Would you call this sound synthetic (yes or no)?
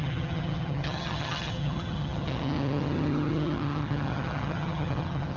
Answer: yes